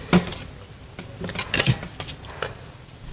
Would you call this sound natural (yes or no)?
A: yes